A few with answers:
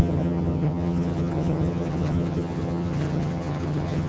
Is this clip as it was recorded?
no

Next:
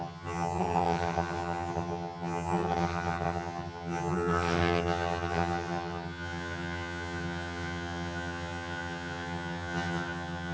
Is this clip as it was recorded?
no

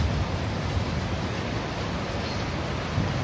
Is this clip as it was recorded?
yes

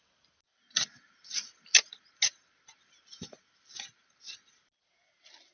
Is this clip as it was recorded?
yes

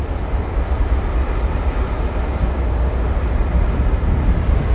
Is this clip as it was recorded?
yes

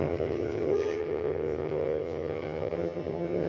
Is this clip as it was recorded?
no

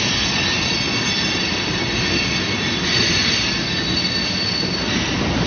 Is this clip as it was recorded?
yes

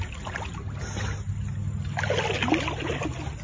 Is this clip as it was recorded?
yes